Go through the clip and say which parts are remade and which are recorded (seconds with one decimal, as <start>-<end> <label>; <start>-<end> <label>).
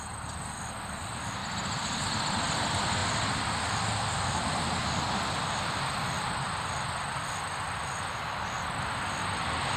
0.0-9.8 recorded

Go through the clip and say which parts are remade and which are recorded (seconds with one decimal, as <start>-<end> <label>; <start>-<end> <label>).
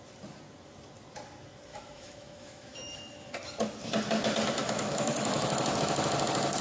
0.0-1.7 recorded; 1.7-3.3 remade; 3.3-4.6 recorded; 4.6-5.7 remade; 5.7-6.6 recorded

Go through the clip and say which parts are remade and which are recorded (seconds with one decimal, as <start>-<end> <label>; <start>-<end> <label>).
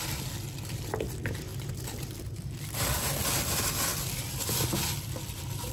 0.0-1.5 recorded; 1.5-2.5 remade; 2.5-5.7 recorded